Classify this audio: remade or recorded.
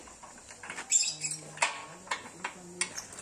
recorded